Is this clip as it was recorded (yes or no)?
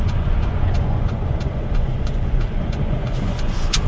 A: no